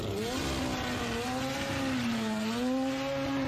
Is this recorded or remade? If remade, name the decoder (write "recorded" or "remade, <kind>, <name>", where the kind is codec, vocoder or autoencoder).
recorded